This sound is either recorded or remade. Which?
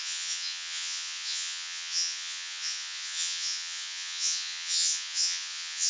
remade